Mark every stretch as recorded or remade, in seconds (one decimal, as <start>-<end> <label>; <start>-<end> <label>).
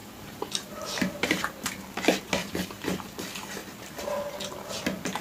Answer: 0.0-1.7 remade; 1.7-2.4 recorded; 2.4-3.0 remade; 3.0-5.2 recorded